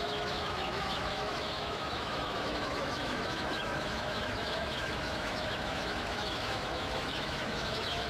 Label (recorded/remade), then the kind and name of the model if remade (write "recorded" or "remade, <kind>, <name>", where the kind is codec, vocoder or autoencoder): remade, autoencoder, DAC-VAE